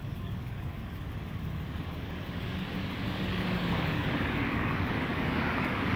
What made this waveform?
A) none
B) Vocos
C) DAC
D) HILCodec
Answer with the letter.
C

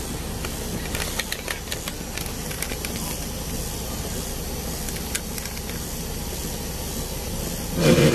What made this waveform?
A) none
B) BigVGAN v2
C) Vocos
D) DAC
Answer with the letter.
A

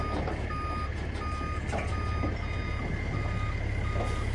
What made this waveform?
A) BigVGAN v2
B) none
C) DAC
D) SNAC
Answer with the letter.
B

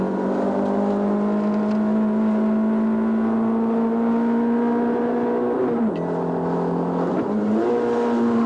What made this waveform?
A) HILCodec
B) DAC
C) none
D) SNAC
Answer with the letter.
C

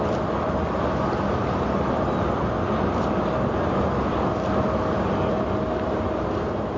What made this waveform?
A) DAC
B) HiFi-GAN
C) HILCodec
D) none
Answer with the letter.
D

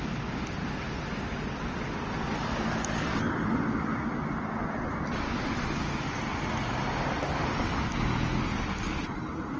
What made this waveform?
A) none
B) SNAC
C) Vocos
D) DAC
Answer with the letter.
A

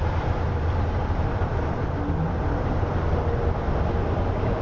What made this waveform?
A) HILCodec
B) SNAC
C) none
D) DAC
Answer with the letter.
C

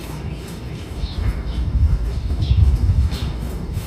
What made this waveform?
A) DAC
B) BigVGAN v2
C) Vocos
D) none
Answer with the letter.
A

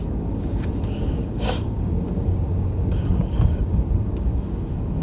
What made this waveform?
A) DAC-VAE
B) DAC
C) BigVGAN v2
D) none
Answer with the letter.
B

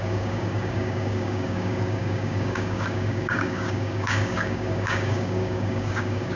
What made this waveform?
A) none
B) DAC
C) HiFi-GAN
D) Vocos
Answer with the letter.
B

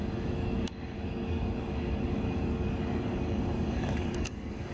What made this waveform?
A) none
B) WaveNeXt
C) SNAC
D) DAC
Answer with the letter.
D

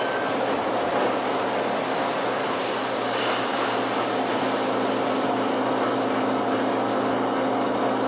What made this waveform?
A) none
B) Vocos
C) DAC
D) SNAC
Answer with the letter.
A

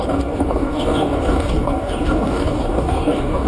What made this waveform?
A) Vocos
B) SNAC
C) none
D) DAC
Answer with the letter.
D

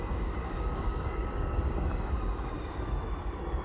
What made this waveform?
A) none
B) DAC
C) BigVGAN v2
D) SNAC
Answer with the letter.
B